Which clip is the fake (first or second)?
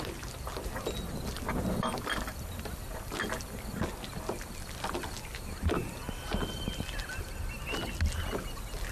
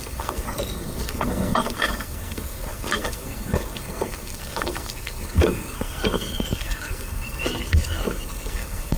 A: second